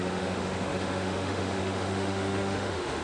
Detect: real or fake fake